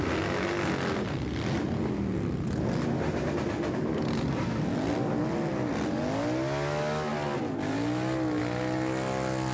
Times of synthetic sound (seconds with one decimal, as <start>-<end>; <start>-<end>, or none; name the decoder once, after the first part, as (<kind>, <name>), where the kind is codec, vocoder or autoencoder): none